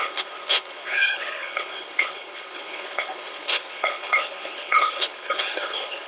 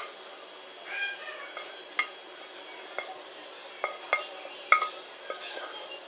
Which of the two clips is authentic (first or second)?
second